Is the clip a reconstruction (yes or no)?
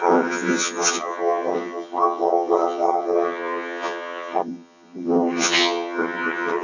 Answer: yes